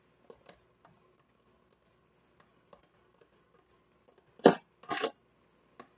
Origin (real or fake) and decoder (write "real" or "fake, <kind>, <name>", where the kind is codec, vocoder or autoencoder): real